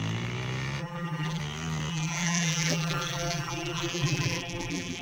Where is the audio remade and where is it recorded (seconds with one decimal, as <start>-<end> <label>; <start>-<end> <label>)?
0.0-0.8 recorded; 0.8-1.4 remade; 1.4-1.9 recorded; 1.9-5.0 remade